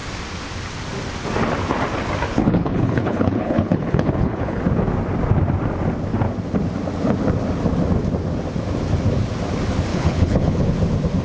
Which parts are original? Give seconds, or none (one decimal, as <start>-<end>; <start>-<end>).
0.0-2.3; 4.6-9.9; 10.7-11.2